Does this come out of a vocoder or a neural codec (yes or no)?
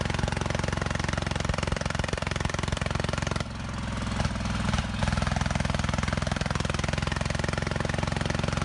no